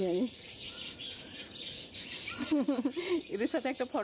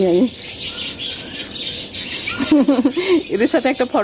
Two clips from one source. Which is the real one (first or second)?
second